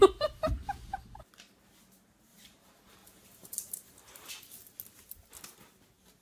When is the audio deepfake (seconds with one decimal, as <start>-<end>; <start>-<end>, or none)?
0.0-1.7; 2.3-4.3